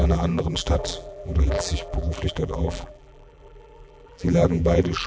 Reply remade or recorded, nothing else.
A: remade